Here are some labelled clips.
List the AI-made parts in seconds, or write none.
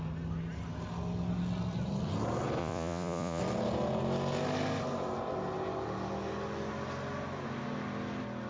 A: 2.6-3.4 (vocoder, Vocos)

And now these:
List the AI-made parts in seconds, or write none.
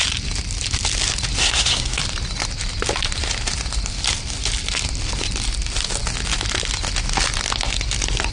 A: 1.4-2.0 (codec, SNAC)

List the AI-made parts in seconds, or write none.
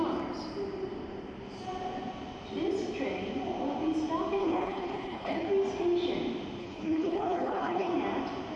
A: 4.4-5.5 (codec, HILCodec); 6.6-7.9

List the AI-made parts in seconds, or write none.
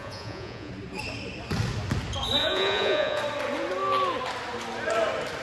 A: 0.0-0.7 (vocoder, Vocos); 2.4-3.2